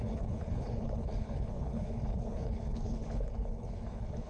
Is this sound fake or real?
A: fake